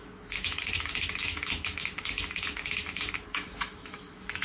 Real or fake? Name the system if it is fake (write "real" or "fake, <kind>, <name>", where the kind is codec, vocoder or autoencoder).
fake, autoencoder, DAC-VAE